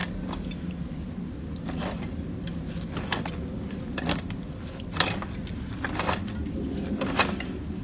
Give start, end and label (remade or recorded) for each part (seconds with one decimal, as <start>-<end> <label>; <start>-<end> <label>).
0.0-7.8 recorded